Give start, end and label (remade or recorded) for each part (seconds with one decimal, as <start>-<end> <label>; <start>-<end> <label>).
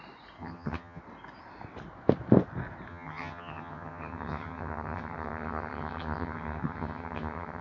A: 0.0-0.4 recorded; 0.4-1.0 remade; 1.0-2.9 recorded; 2.9-7.6 remade